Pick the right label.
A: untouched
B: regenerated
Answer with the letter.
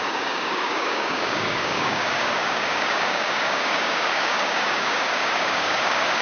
B